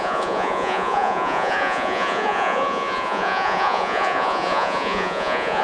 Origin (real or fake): fake